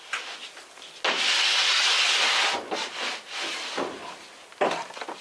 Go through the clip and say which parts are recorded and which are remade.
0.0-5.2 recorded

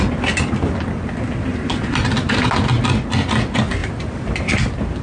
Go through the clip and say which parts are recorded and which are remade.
0.0-1.5 recorded; 1.5-2.5 remade; 2.5-3.8 recorded; 3.8-4.5 remade; 4.5-5.0 recorded

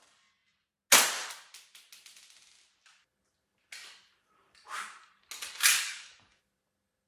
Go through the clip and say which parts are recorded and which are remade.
0.0-5.6 recorded; 5.6-6.4 remade; 6.4-7.1 recorded

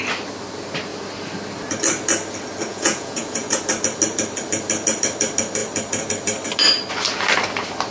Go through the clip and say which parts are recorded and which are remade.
0.0-2.7 recorded; 2.7-3.6 remade; 3.6-7.9 recorded

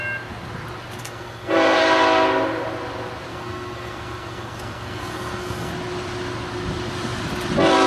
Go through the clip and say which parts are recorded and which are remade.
0.0-1.0 recorded; 1.0-1.8 remade; 1.8-3.3 recorded; 3.3-5.7 remade; 5.7-7.9 recorded

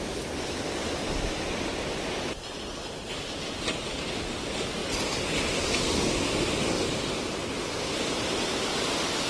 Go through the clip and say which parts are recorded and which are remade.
0.0-9.3 recorded

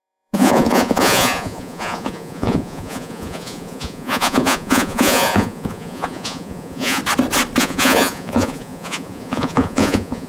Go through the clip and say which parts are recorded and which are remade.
0.0-7.0 remade; 7.0-7.6 recorded; 7.6-10.3 remade

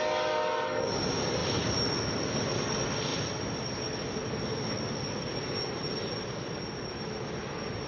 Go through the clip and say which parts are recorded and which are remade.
0.0-7.9 recorded